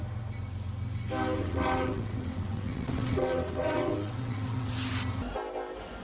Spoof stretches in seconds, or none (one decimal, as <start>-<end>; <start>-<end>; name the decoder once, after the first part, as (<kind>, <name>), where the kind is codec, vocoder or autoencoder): 1.4-4.7 (vocoder, WaveNeXt)